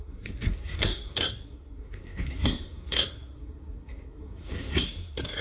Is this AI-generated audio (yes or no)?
yes